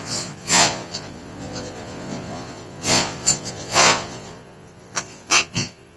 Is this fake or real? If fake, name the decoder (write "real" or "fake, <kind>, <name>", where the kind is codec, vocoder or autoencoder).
fake, vocoder, Vocos